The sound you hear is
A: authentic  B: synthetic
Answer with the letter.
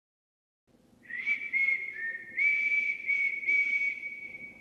A